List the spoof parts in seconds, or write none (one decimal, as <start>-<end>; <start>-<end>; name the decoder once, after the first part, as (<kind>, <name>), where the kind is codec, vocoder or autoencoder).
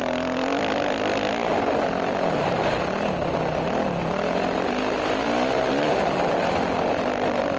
none